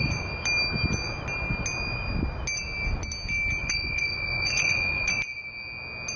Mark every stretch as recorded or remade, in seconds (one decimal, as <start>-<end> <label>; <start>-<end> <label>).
0.0-3.6 recorded; 3.6-5.1 remade; 5.1-6.2 recorded